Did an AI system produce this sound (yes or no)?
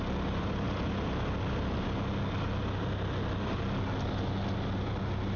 no